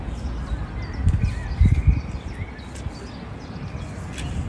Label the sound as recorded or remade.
recorded